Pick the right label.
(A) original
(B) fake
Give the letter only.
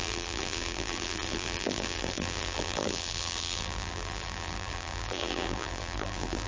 B